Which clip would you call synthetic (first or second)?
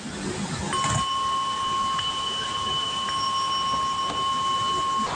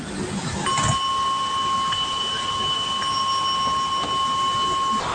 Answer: first